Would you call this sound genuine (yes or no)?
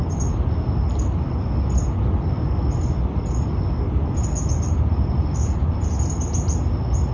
yes